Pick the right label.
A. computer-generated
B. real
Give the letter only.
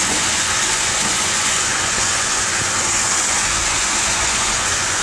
A